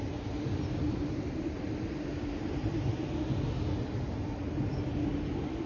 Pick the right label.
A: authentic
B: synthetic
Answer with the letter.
A